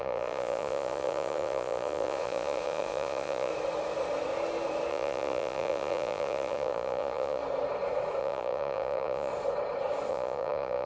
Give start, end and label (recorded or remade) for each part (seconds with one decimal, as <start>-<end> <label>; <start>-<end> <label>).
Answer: 0.0-3.5 remade; 3.5-4.9 recorded; 4.9-7.4 remade; 7.4-8.2 recorded; 8.2-9.3 remade; 9.3-10.1 recorded; 10.1-10.9 remade